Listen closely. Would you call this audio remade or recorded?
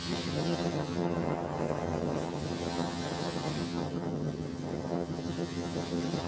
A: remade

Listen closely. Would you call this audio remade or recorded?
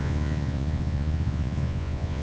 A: remade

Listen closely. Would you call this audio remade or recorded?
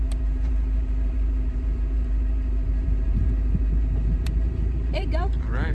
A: remade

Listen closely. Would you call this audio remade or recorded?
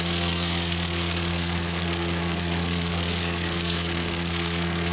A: remade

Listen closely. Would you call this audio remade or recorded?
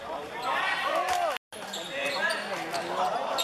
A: recorded